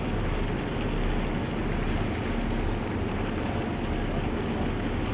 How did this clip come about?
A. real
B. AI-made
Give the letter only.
A